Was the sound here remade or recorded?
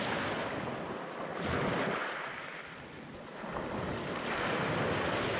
recorded